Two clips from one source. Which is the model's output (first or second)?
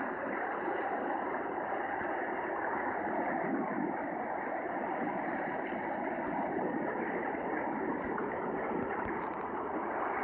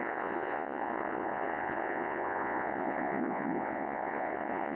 second